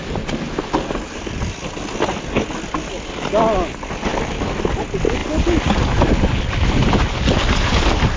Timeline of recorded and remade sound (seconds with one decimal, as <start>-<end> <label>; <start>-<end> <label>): 0.0-8.2 recorded